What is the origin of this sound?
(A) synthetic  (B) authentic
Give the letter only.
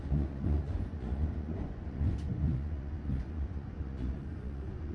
A